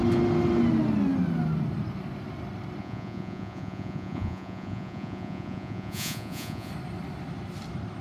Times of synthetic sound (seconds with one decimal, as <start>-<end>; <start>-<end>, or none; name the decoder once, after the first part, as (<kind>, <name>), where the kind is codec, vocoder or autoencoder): 2.8-6.7 (vocoder, Vocos)